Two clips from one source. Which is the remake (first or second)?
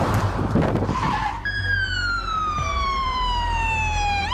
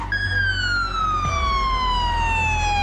first